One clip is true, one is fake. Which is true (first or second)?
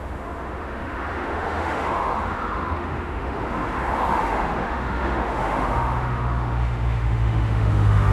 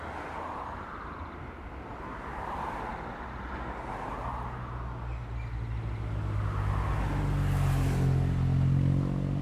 second